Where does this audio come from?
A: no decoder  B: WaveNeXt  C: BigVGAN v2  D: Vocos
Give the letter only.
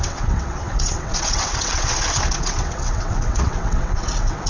B